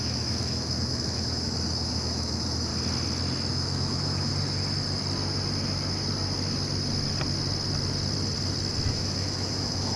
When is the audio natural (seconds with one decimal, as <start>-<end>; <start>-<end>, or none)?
2.7-3.5; 4.3-8.9